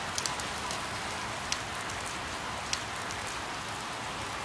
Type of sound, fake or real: real